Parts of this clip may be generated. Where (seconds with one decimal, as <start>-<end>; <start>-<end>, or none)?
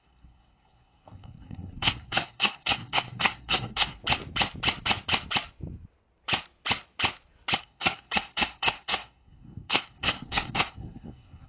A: 0.0-4.0; 7.6-11.5